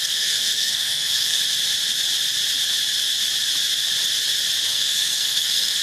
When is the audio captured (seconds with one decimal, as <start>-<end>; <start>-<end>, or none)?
1.4-4.7